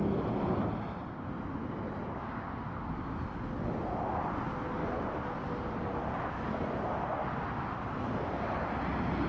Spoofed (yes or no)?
no